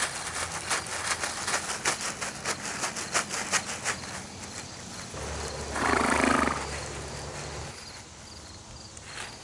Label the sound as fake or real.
real